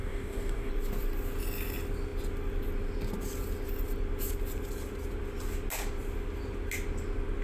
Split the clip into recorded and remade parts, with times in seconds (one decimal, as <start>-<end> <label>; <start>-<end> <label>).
0.0-0.7 remade; 0.7-7.4 recorded

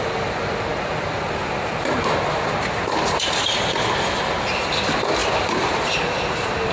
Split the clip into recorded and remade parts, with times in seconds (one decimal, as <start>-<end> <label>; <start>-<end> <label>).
0.0-5.2 recorded; 5.2-5.9 remade; 5.9-6.7 recorded

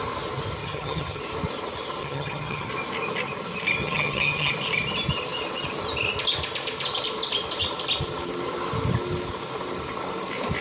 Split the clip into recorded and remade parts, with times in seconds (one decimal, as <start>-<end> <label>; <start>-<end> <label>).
0.0-0.6 recorded; 0.6-1.2 remade; 1.2-2.0 recorded; 2.0-2.7 remade; 2.7-3.8 recorded; 3.8-4.5 remade; 4.5-10.6 recorded

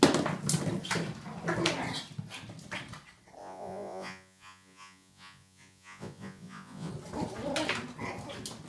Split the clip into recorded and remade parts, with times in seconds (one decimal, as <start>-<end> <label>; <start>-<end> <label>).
0.0-3.4 recorded; 3.4-6.9 remade; 6.9-8.7 recorded

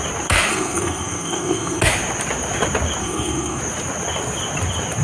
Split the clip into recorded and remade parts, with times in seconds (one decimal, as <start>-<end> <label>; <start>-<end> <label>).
0.0-0.5 recorded; 0.5-1.8 remade; 1.8-3.0 recorded; 3.0-3.6 remade; 3.6-5.0 recorded

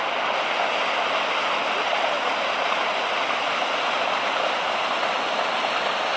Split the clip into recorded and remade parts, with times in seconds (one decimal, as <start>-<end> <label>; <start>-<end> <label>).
0.0-6.2 recorded

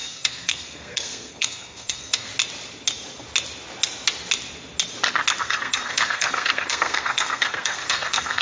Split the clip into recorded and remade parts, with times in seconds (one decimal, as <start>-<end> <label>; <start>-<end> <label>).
0.0-2.3 remade; 2.3-5.4 recorded; 5.4-8.4 remade